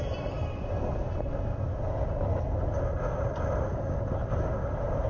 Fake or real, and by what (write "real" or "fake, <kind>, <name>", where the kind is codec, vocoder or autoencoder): real